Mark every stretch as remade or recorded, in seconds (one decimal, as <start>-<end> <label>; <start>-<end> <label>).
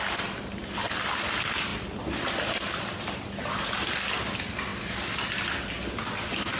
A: 0.0-6.6 recorded